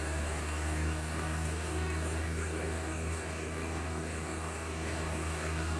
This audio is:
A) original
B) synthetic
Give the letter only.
B